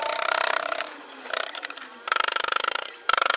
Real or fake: fake